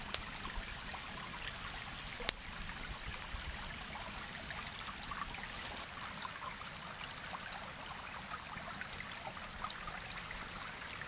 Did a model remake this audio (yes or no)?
no